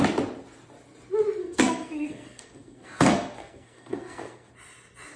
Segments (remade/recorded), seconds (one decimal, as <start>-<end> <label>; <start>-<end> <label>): 0.0-1.4 recorded; 1.4-4.5 remade; 4.5-5.2 recorded

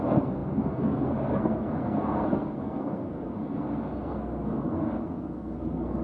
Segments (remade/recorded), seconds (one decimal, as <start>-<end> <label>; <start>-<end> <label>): 0.0-6.0 remade